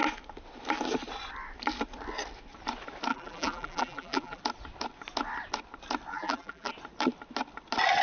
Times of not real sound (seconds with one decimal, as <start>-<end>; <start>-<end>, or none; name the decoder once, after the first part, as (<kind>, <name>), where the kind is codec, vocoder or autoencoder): 3.1-4.4 (vocoder, BigVGAN v2); 6.1-6.7